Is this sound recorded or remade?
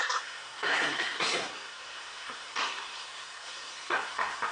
remade